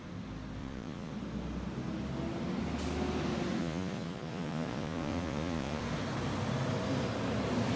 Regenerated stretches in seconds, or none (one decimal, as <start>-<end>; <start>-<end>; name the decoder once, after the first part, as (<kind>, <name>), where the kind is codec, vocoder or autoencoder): 0.6-1.1 (vocoder, Vocos); 3.6-5.8